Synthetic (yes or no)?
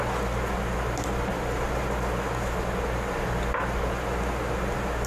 no